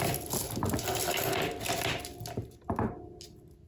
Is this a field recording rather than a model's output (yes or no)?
yes